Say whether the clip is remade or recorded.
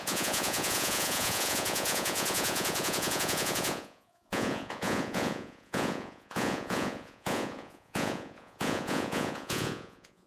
remade